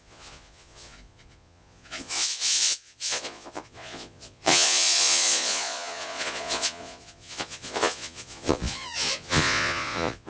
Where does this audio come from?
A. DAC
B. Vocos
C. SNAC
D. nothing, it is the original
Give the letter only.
B